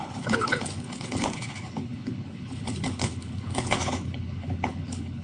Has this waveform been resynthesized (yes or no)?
yes